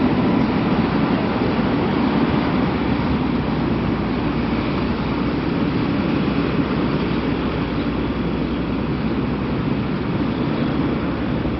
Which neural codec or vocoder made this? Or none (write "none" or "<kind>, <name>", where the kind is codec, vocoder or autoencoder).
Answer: none